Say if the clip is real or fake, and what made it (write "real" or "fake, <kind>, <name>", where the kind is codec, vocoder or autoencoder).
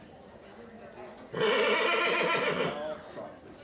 real